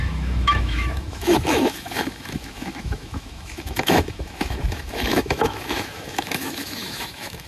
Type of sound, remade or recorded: remade